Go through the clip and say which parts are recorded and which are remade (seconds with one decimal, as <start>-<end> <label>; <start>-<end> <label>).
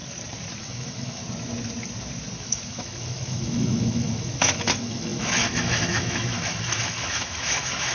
0.0-0.6 recorded; 0.6-1.2 remade; 1.2-2.4 recorded; 2.4-7.9 remade